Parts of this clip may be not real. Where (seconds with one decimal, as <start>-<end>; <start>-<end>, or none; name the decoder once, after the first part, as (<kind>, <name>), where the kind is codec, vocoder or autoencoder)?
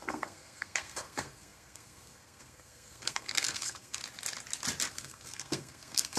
0.0-4.0 (codec, SNAC); 4.9-6.2